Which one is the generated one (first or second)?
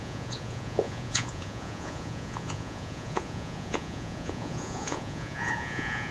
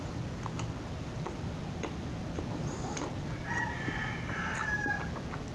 first